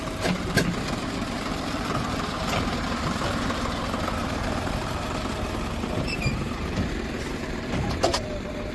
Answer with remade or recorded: remade